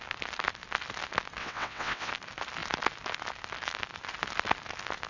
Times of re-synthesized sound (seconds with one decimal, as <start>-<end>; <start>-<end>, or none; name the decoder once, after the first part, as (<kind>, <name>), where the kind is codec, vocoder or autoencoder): 1.4-2.1 (vocoder, WaveNeXt)